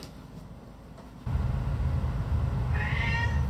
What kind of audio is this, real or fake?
real